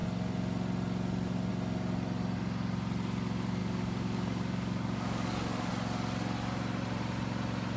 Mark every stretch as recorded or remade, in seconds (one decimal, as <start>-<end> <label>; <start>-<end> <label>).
0.0-3.6 recorded; 3.6-5.7 remade; 5.7-7.8 recorded